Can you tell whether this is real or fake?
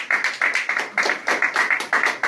real